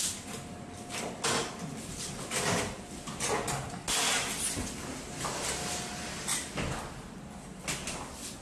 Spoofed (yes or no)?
no